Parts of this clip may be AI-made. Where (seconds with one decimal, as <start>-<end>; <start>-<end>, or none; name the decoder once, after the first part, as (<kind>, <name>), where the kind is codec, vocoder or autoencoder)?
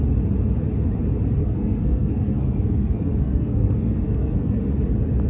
1.4-4.6 (codec, SNAC)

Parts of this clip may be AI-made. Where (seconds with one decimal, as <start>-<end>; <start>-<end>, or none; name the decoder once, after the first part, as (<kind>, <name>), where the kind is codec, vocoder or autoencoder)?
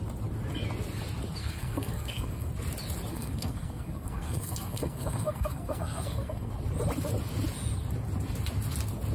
1.4-2.5 (codec, SNAC); 3.1-6.5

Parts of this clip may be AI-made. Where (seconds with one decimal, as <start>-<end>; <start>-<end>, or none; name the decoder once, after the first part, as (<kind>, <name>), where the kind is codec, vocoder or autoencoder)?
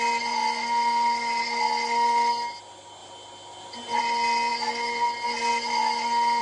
none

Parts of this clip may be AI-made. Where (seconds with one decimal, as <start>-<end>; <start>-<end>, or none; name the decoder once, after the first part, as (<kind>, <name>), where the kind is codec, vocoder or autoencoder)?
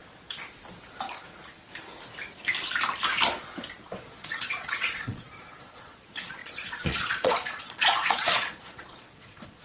4.0-9.6 (vocoder, Vocos)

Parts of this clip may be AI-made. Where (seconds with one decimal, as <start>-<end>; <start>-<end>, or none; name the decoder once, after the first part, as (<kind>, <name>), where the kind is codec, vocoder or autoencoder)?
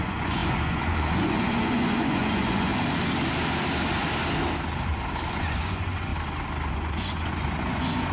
0.0-2.7 (vocoder, Vocos); 5.3-6.1; 6.7-8.1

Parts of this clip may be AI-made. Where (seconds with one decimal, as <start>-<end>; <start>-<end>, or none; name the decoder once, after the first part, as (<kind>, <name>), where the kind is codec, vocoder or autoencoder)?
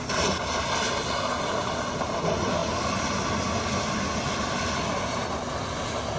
none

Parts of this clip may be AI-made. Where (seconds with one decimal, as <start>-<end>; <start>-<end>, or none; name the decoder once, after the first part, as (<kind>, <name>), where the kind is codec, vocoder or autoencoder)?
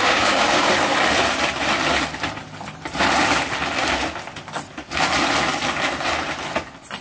0.0-0.7 (codec, DAC)